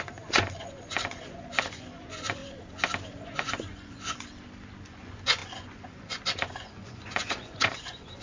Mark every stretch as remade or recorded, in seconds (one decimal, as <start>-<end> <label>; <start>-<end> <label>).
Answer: 0.0-2.4 remade; 2.4-3.2 recorded; 3.2-4.3 remade; 4.3-4.8 recorded; 4.8-8.2 remade